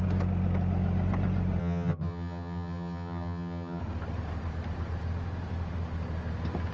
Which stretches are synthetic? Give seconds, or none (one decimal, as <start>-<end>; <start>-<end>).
1.6-3.8